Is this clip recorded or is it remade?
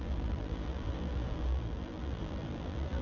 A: remade